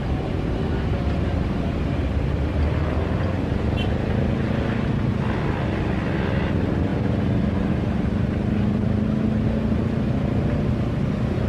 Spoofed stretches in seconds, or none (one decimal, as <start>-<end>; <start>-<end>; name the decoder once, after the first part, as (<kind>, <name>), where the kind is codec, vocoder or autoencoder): none